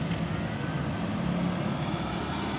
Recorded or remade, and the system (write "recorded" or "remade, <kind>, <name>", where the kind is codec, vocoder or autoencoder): recorded